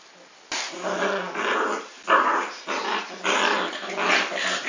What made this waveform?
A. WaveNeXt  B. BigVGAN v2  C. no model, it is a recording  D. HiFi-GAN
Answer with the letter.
C